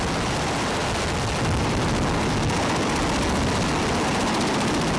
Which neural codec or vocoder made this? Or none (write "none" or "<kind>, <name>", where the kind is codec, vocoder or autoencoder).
none